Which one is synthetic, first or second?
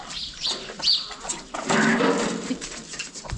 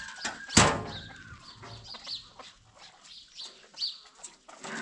first